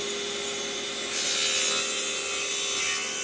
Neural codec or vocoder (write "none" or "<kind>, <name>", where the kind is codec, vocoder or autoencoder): none